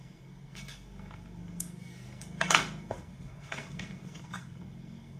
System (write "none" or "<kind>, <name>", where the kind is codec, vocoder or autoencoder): codec, SNAC